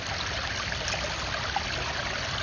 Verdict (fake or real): real